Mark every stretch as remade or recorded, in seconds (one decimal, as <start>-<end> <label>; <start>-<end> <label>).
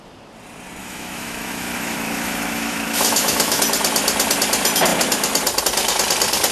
0.0-0.8 recorded; 0.8-3.6 remade; 3.6-6.5 recorded